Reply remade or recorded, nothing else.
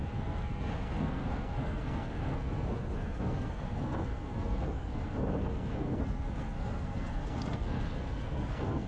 remade